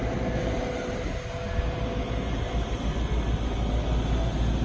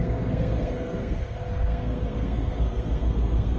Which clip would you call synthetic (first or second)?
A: second